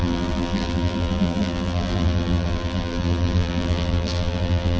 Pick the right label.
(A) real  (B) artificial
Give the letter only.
B